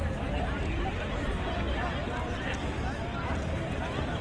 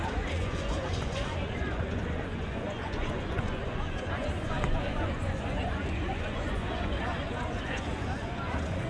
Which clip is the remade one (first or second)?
second